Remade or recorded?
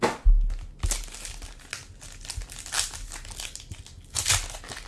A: recorded